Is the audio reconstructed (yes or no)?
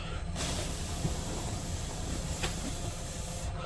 yes